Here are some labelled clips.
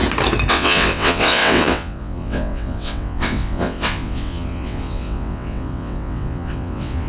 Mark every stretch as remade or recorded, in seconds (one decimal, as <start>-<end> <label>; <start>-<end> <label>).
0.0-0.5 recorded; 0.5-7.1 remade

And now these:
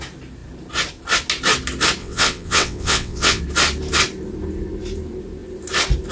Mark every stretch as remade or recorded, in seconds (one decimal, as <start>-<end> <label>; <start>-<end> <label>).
0.0-2.0 recorded; 2.0-3.4 remade; 3.4-6.1 recorded

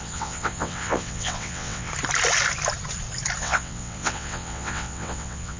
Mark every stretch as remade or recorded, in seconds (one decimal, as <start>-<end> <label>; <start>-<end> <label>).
0.0-1.9 remade; 1.9-3.4 recorded; 3.4-5.6 remade